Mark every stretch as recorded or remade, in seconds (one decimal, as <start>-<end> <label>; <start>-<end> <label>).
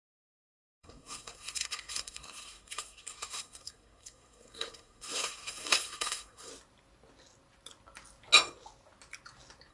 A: 0.0-6.5 remade; 6.5-9.7 recorded